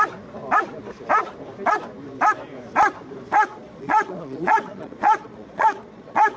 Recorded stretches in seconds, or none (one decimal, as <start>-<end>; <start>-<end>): 0.0-3.6